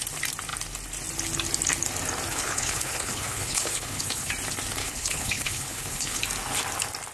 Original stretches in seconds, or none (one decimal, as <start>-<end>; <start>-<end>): 0.0-2.3; 4.3-4.8; 6.2-7.1